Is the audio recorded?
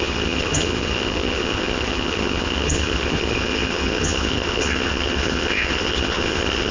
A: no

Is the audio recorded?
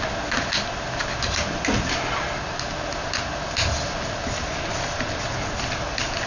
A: yes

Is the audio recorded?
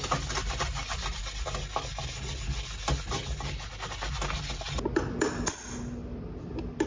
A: yes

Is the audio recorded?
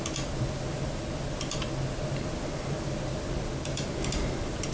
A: yes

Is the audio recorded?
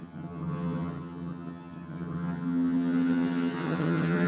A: no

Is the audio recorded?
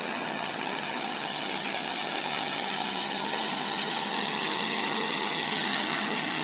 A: no